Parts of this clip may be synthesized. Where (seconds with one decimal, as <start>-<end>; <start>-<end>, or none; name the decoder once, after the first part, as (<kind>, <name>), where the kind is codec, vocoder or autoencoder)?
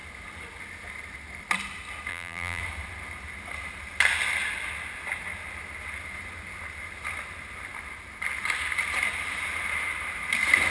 2.1-2.6 (vocoder, BigVGAN v2)